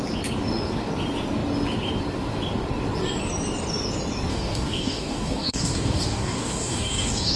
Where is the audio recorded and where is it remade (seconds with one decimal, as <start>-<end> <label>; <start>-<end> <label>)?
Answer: 0.0-4.3 recorded; 4.3-7.4 remade